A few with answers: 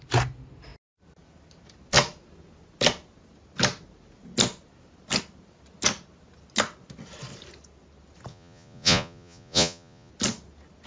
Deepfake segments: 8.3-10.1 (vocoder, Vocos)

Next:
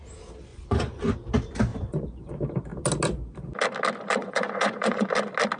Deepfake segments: 0.5-1.0 (vocoder, Vocos); 1.7-2.3; 4.2-5.1

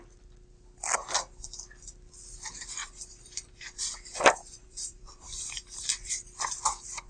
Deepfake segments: 2.8-6.1 (vocoder, BigVGAN v2)

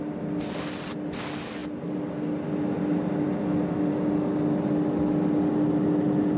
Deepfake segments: none